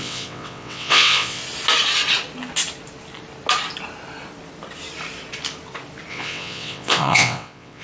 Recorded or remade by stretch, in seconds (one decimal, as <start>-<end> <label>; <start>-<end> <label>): 0.0-1.4 remade; 1.4-6.1 recorded; 6.1-7.8 remade